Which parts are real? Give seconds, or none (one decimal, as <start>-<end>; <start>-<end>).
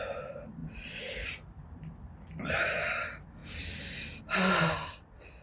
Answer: 0.0-5.4